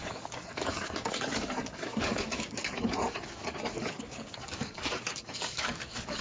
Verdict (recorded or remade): remade